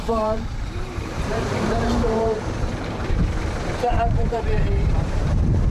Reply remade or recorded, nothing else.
remade